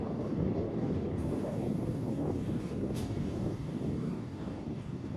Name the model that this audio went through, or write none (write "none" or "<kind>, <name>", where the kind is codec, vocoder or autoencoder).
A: codec, DAC